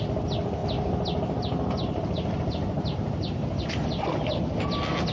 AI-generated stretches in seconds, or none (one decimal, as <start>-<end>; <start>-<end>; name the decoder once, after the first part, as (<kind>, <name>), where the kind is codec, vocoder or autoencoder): none